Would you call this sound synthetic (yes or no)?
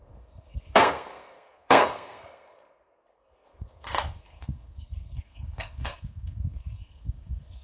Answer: yes